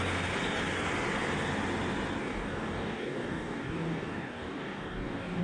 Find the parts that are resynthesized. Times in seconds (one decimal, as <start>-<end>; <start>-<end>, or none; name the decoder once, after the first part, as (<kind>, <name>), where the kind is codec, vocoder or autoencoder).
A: 2.2-5.4 (codec, DAC)